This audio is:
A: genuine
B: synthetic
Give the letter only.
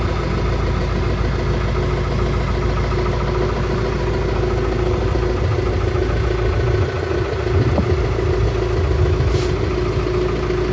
A